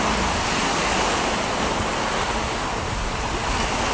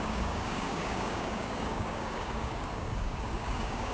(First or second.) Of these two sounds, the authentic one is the first